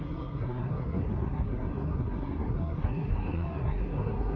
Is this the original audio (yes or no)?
no